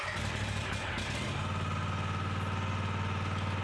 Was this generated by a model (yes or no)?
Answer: no